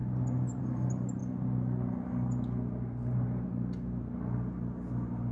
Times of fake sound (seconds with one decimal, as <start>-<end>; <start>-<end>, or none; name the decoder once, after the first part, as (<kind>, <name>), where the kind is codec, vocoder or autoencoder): none

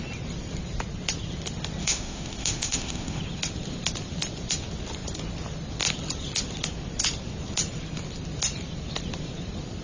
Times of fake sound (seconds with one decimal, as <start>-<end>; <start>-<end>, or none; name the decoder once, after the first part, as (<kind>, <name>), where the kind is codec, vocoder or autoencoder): 1.8-3.2 (autoencoder, DAC-VAE)

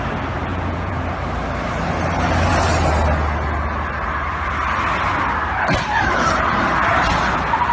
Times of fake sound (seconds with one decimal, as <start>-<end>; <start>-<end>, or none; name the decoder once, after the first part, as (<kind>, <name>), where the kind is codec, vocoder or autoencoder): 0.5-1.0 (vocoder, Vocos)

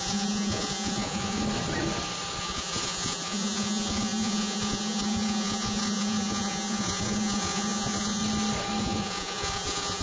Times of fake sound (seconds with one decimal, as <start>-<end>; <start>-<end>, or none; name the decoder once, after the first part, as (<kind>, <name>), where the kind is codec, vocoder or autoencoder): 0.0-1.4 (vocoder, Vocos); 2.4-8.2; 8.8-10.0

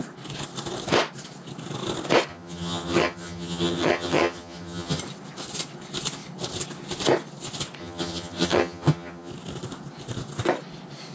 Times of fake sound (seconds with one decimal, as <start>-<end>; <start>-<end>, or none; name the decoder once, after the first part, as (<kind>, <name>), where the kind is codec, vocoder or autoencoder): 2.3-5.0 (vocoder, HiFi-GAN); 7.8-9.3

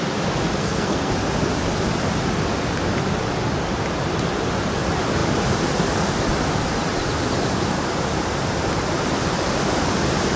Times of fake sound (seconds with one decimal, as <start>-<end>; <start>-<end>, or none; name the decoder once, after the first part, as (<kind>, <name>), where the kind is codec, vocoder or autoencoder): 0.6-1.1 (codec, SNAC)

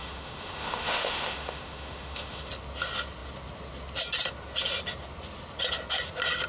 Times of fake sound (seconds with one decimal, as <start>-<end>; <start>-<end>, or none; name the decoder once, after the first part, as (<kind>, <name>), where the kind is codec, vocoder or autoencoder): 0.0-2.5 (autoencoder, DAC-VAE)

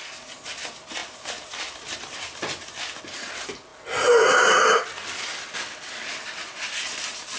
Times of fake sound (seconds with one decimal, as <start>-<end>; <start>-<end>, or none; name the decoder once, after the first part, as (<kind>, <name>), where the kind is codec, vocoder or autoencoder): none